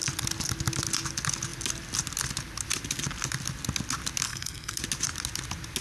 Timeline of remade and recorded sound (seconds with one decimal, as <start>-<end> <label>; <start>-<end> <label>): 0.0-4.3 recorded; 4.3-4.8 remade; 4.8-5.8 recorded